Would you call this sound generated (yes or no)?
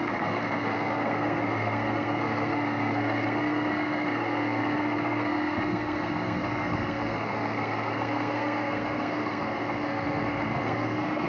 yes